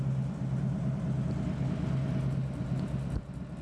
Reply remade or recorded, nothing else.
recorded